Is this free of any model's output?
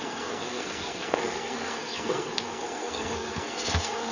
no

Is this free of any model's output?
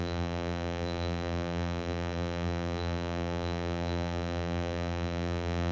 no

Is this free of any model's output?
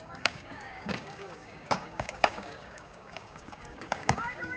no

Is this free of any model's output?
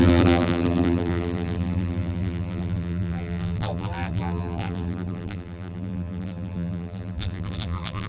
no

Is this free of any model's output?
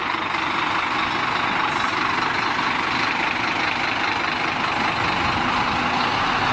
yes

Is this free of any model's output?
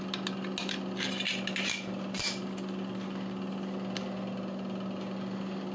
yes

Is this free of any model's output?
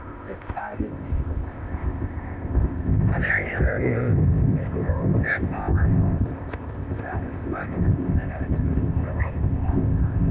no